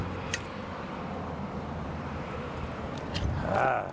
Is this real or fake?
fake